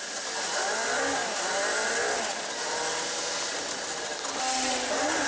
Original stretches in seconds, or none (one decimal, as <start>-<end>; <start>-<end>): 0.0-5.3